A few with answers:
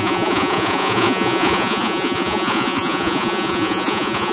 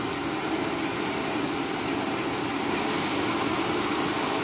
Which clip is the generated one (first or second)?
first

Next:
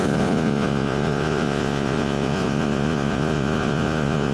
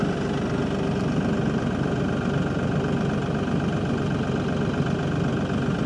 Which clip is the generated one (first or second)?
first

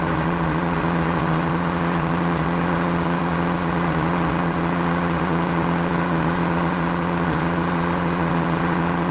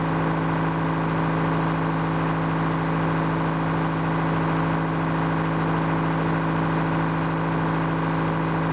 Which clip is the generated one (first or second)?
first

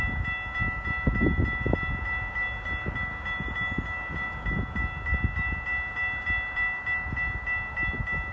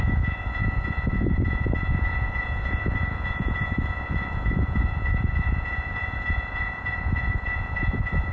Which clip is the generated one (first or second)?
second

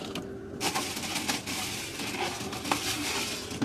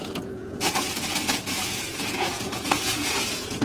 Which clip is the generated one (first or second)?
second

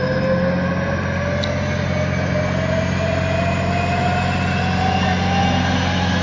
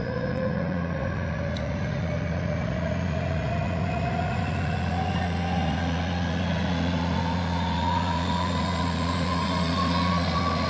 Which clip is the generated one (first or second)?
second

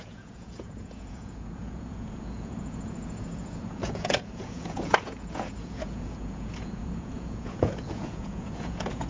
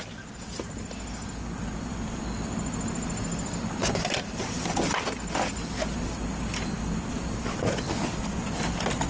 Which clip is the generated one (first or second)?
first